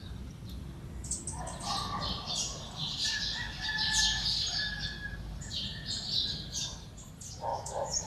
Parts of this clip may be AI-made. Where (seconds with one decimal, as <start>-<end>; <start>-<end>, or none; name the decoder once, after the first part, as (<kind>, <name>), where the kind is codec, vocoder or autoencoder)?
7.5-8.1 (autoencoder, DAC-VAE)